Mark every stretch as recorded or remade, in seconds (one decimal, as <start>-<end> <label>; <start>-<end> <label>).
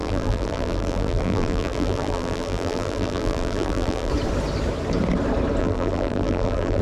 0.0-4.1 remade; 4.1-5.6 recorded; 5.6-6.8 remade